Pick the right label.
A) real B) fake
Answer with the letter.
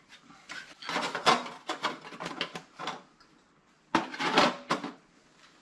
A